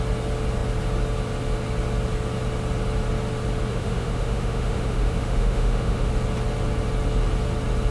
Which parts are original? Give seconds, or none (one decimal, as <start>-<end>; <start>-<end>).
0.0-3.7; 6.1-7.9